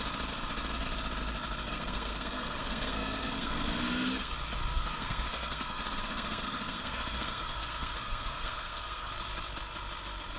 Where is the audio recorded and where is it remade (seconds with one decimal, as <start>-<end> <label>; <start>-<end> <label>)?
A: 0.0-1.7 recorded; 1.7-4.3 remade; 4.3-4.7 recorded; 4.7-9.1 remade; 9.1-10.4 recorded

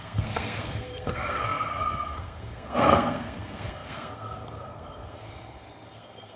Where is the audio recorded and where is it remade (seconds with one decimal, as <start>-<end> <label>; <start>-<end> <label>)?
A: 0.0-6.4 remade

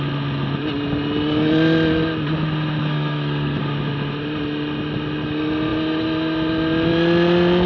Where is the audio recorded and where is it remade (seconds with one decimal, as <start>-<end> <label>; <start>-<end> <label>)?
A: 0.0-2.8 recorded; 2.8-3.6 remade; 3.6-7.7 recorded

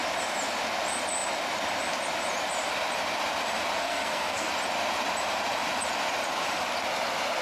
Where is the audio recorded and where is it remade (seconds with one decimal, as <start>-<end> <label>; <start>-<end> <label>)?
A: 0.0-3.8 recorded; 3.8-4.5 remade; 4.5-7.4 recorded